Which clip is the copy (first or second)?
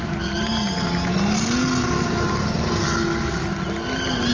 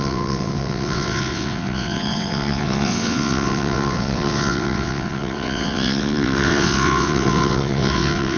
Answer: second